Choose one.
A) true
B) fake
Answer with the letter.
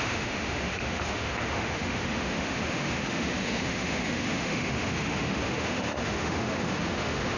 B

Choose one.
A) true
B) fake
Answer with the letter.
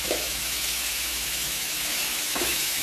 B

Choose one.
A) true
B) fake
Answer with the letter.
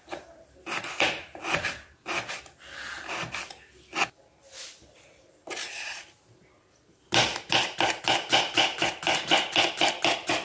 A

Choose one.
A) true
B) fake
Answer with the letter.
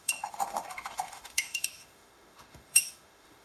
B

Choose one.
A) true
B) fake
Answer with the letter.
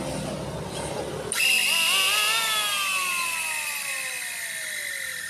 A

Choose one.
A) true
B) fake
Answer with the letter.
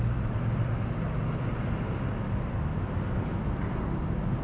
A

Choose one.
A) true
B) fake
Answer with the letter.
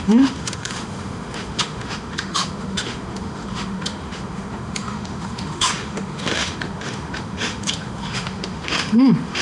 B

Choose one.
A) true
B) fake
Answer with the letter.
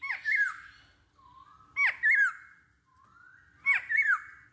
A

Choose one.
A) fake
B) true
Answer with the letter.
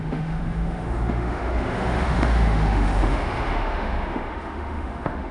A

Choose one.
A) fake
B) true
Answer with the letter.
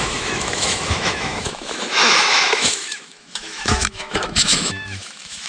A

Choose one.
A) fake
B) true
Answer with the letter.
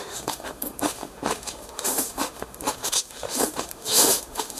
A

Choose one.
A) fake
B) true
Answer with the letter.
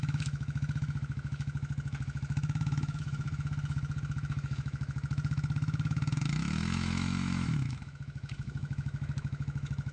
A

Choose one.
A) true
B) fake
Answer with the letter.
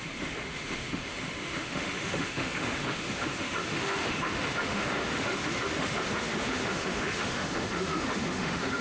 B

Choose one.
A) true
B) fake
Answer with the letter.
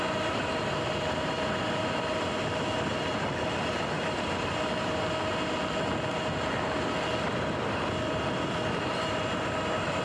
A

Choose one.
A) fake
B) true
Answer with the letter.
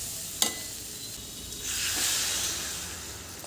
B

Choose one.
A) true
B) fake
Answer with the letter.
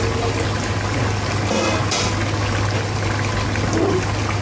A